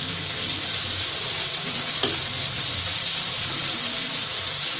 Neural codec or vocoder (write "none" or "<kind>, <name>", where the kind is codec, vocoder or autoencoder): vocoder, BigVGAN v2